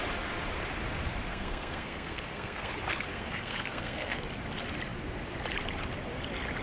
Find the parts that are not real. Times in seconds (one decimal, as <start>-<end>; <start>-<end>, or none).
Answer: 1.3-2.7; 3.1-4.2